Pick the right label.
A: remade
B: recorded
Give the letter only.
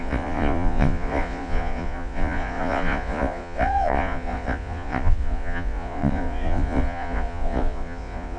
A